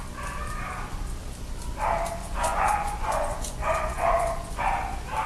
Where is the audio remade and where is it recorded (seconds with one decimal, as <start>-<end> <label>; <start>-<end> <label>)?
0.0-2.2 recorded; 2.2-4.6 remade; 4.6-5.3 recorded